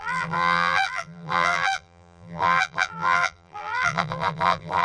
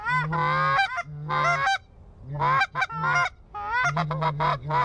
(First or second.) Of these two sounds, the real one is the second